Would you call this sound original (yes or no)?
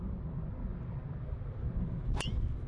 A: yes